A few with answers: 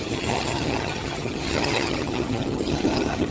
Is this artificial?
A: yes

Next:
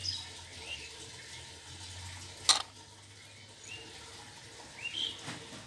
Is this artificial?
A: no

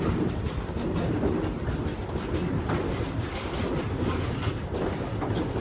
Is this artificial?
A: no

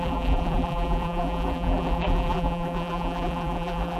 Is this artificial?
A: yes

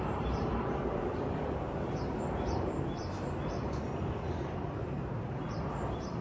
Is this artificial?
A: yes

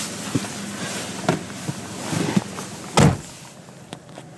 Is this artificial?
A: no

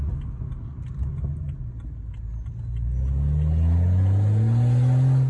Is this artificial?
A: no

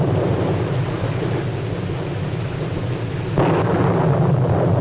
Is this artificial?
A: no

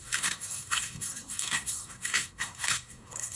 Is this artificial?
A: yes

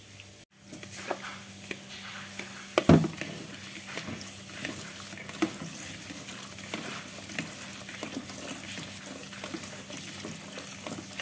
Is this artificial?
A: no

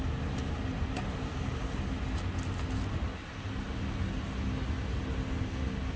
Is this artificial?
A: no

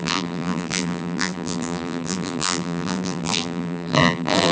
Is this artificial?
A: yes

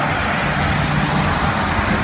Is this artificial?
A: no